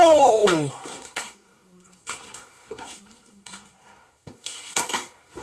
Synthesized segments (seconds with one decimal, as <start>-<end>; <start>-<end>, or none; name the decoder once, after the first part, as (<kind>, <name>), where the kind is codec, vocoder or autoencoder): 0.0-5.4 (codec, SNAC)